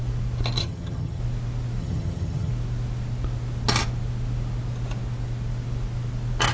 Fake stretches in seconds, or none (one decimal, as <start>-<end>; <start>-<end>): 0.6-1.2; 1.8-2.5